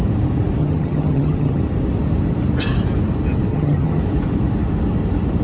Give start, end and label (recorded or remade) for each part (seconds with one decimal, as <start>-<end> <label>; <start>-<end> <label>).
0.0-0.6 recorded; 0.6-1.6 remade; 1.6-3.5 recorded; 3.5-4.0 remade; 4.0-5.4 recorded